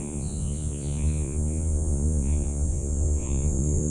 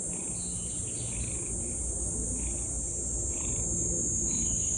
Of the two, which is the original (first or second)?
second